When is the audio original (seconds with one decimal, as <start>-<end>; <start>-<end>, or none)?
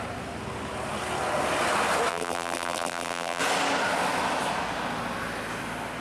0.0-2.1; 3.4-6.0